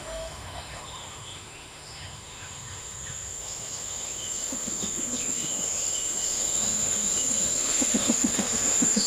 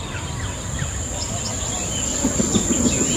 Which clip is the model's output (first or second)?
first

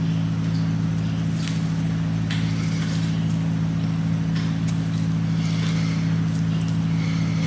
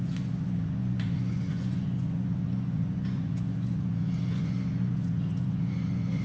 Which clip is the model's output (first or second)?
second